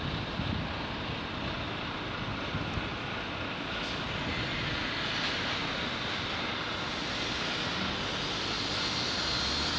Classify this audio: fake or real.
real